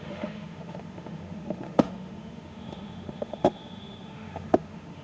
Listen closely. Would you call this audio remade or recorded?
remade